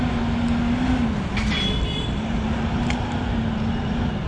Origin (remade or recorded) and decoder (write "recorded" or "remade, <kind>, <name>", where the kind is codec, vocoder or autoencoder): recorded